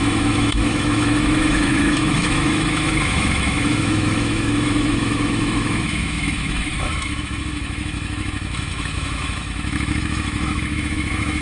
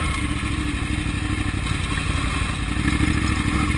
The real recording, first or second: second